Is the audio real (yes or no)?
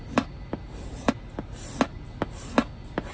yes